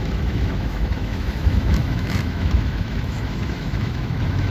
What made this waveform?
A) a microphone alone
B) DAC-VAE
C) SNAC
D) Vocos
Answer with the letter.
B